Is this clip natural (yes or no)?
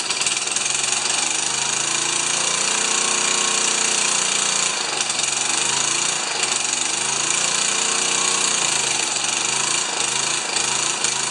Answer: yes